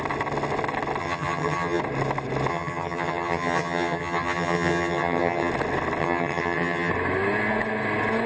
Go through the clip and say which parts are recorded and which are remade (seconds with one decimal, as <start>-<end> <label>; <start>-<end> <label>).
0.0-1.0 recorded; 1.0-1.8 remade; 1.8-2.5 recorded; 2.5-5.5 remade; 5.5-6.0 recorded; 6.0-6.9 remade; 6.9-8.3 recorded